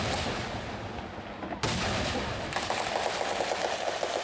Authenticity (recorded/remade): recorded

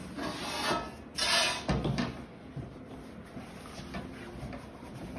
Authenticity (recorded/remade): recorded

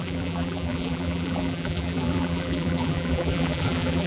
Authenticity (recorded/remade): remade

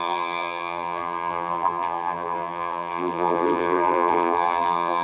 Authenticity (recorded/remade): remade